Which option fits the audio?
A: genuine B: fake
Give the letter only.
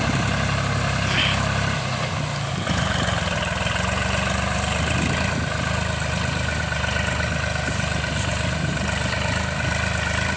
A